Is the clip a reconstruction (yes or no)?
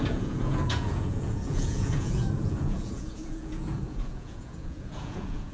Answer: yes